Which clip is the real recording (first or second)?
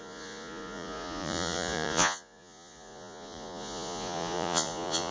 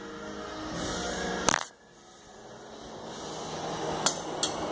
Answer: second